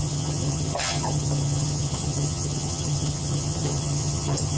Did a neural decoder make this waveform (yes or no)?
yes